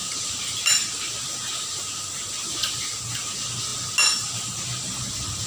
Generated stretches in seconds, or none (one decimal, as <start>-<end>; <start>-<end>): none